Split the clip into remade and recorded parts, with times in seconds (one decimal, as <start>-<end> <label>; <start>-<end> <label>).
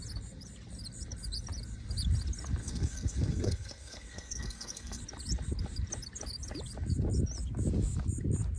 0.0-2.6 recorded; 2.6-5.0 remade; 5.0-8.6 recorded